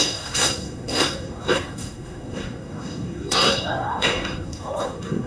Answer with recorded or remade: remade